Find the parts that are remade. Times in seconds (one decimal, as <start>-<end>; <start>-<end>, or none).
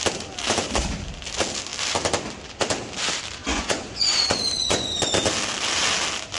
3.4-5.1